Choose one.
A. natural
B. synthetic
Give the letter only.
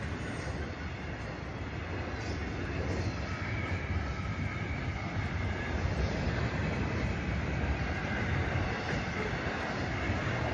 A